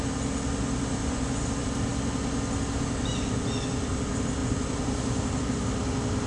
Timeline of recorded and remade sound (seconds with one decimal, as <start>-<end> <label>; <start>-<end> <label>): 0.0-1.0 recorded; 1.0-1.5 remade; 1.5-6.3 recorded